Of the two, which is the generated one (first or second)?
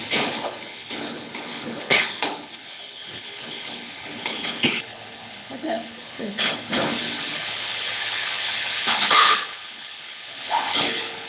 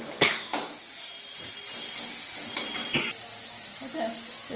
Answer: first